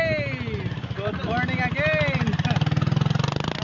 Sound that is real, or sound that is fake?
real